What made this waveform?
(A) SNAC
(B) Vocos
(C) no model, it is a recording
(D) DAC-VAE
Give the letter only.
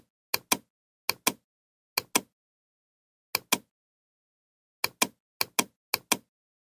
C